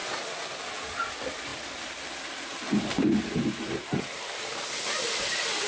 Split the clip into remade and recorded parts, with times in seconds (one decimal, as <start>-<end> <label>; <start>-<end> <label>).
0.0-0.6 remade; 0.6-1.5 recorded; 1.5-4.7 remade; 4.7-5.7 recorded